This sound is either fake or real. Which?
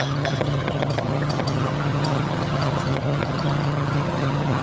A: fake